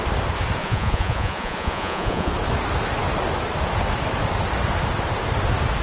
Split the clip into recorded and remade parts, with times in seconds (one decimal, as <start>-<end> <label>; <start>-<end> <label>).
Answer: 0.0-0.6 recorded; 0.6-2.3 remade; 2.3-5.8 recorded